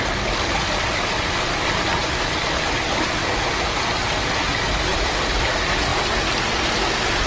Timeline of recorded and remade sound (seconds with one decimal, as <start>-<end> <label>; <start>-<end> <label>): 0.0-4.9 recorded; 4.9-5.5 remade; 5.5-7.3 recorded